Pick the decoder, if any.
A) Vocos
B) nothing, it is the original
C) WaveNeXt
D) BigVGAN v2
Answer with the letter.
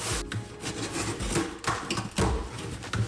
B